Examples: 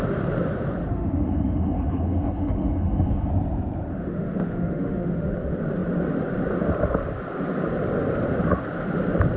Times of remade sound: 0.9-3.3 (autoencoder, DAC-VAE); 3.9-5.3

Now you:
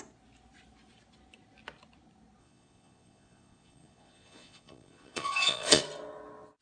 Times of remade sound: 2.4-5.8 (vocoder, Vocos)

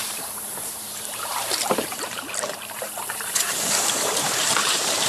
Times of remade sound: 0.0-5.1 (vocoder, BigVGAN v2)

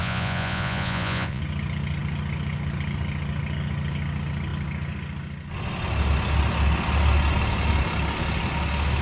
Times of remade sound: 0.0-1.4 (vocoder, Vocos)